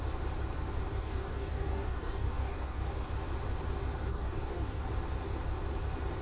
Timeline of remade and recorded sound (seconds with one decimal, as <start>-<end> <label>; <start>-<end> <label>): 0.0-1.0 recorded; 1.0-3.1 remade; 3.1-4.1 recorded; 4.1-4.8 remade; 4.8-6.2 recorded